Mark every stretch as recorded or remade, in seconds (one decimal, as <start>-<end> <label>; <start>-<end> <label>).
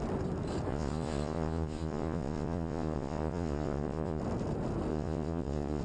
0.0-0.7 recorded; 0.7-4.2 remade; 4.2-4.9 recorded; 4.9-5.8 remade